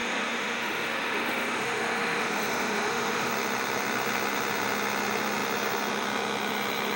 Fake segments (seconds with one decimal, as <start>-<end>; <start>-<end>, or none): 0.0-3.3